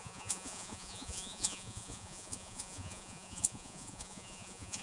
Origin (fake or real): fake